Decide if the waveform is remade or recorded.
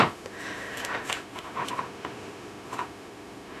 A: remade